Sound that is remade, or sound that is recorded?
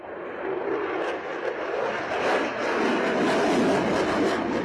recorded